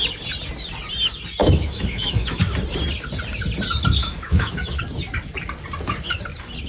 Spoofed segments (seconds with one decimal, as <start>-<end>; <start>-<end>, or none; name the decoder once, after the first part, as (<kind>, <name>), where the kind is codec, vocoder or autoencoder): 1.4-2.4 (autoencoder, DAC-VAE); 4.0-4.8